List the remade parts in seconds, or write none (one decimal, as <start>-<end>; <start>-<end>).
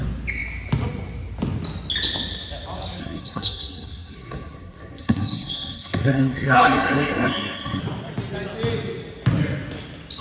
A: 3.0-7.8